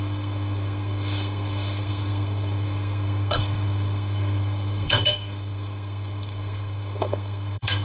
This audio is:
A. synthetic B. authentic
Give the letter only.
A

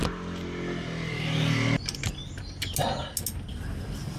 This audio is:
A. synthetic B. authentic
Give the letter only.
B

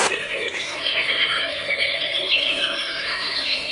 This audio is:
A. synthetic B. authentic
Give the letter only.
A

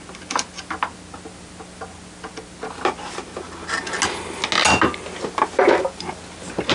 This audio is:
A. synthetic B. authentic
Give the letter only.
B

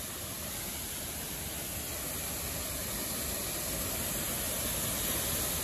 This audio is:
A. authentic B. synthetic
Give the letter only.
A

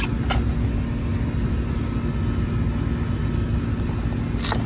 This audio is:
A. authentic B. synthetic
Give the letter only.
A